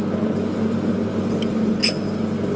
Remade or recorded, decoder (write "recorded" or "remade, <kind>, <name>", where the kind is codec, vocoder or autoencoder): recorded